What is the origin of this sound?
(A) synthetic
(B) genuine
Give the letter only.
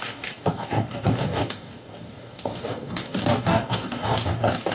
A